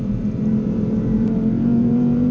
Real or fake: fake